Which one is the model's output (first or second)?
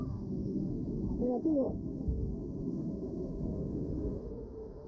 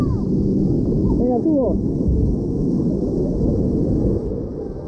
first